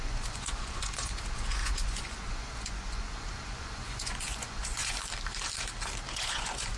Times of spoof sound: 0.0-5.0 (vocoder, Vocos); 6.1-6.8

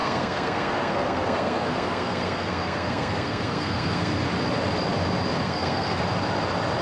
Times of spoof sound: 0.0-4.1 (codec, SNAC); 5.4-6.0

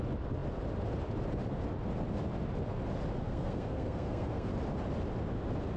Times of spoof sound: 3.2-4.5 (codec, SNAC)

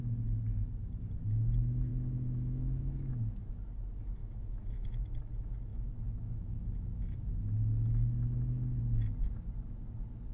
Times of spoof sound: 1.9-3.5 (autoencoder, DAC-VAE); 4.2-5.2; 5.7-8.8